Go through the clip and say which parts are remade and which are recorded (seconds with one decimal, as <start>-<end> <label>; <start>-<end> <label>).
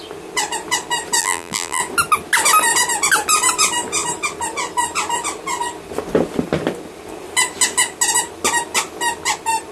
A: 0.0-1.2 recorded; 1.2-1.8 remade; 1.8-9.7 recorded